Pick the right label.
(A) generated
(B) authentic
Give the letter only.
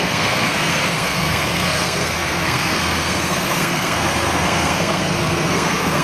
A